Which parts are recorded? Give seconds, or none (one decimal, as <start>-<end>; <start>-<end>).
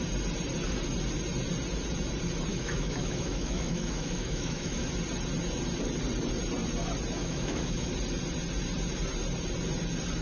0.0-2.5; 4.9-7.2; 7.9-10.2